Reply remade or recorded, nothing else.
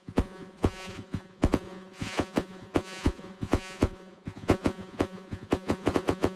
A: remade